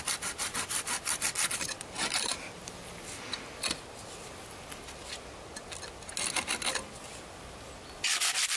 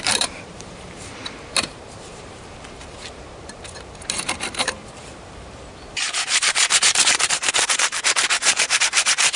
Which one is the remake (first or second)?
second